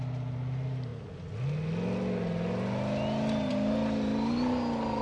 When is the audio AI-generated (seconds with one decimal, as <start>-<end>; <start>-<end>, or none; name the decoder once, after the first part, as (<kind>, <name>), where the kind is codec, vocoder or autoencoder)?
none